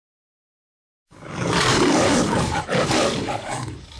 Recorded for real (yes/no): no